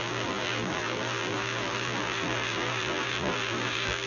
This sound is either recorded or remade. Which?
remade